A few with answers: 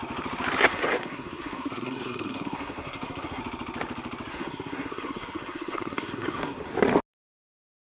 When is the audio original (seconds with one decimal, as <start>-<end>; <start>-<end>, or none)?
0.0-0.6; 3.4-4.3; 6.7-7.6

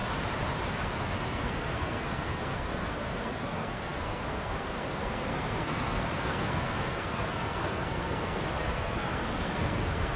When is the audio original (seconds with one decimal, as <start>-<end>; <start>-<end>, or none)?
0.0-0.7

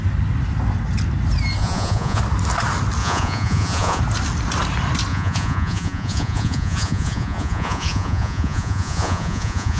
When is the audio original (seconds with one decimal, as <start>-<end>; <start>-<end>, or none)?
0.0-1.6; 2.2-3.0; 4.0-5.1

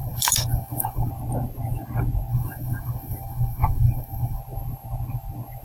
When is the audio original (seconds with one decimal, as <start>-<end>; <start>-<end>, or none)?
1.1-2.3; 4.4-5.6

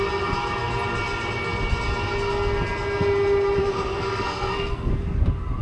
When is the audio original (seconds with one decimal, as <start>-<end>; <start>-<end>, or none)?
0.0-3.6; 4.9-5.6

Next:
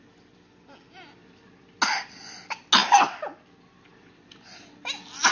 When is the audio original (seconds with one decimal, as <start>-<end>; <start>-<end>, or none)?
0.0-5.3

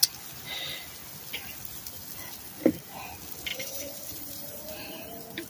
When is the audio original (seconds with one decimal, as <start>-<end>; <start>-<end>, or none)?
0.0-3.5